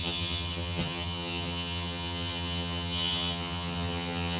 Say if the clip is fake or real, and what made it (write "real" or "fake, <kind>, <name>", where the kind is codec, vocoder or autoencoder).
fake, vocoder, HiFi-GAN